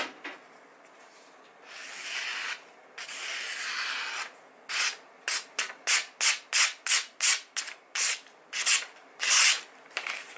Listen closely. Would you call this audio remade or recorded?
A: recorded